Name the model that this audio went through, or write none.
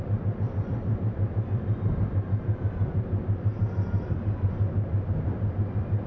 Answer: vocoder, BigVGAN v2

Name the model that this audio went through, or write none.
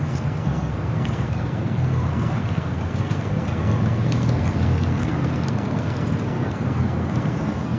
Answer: codec, SNAC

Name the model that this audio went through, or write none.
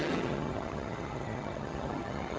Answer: vocoder, HiFi-GAN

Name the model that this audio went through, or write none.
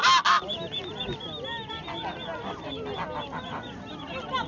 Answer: none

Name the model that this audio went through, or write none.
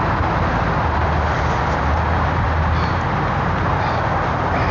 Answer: none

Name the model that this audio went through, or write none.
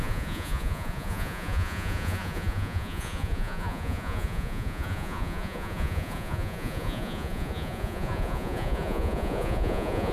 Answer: vocoder, Vocos